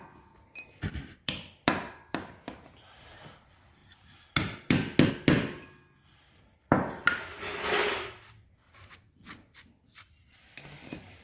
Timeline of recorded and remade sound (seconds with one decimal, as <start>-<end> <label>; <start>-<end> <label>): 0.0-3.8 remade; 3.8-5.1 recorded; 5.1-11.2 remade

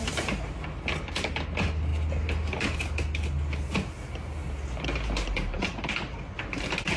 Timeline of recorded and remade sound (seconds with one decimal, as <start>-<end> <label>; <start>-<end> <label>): 0.0-7.0 recorded

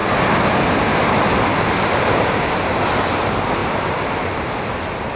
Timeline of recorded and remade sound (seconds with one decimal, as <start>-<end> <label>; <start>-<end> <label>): 0.0-3.6 recorded; 3.6-4.5 remade; 4.5-5.2 recorded

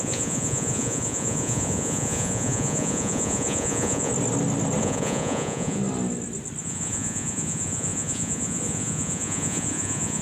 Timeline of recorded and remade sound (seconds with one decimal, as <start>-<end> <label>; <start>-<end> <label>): 0.0-4.1 remade; 4.1-4.8 recorded; 4.8-5.8 remade; 5.8-6.6 recorded; 6.6-10.2 remade